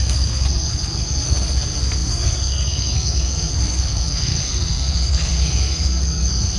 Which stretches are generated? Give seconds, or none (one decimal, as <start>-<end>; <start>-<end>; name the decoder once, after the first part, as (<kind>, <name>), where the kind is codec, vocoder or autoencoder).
0.0-6.6 (codec, SNAC)